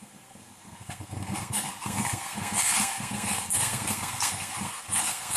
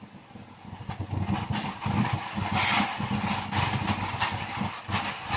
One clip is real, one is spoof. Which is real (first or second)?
second